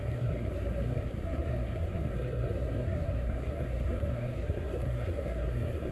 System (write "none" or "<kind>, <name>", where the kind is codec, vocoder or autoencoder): codec, SNAC